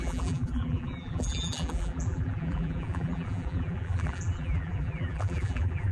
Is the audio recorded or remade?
remade